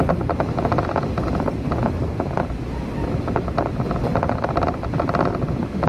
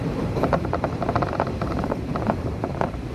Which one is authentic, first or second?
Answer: first